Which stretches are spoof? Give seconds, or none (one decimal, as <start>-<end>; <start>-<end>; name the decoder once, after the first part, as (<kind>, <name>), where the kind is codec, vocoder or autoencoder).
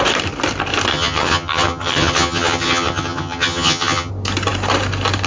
0.9-4.1 (vocoder, HiFi-GAN)